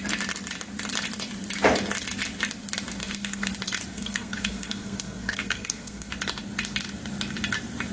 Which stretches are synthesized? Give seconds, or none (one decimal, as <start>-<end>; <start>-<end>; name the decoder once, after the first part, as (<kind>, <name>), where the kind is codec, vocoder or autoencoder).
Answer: 3.0-3.5 (codec, SNAC); 3.9-6.1